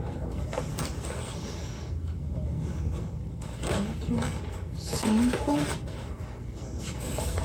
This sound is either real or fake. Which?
fake